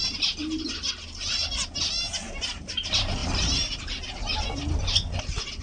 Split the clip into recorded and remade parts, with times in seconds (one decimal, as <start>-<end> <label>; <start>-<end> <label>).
0.0-5.6 recorded